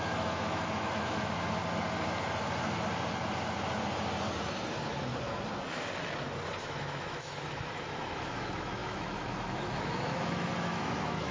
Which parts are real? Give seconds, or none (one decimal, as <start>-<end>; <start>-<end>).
1.6-6.6